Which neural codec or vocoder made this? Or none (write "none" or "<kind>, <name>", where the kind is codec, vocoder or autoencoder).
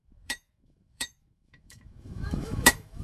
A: autoencoder, DAC-VAE